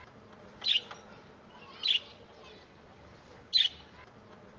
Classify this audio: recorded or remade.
recorded